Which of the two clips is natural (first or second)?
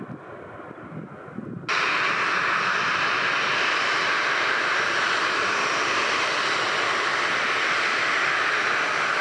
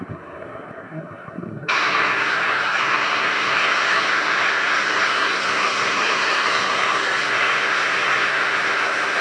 first